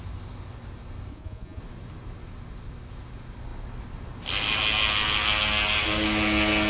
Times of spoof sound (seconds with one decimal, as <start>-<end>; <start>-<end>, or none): 1.1-1.6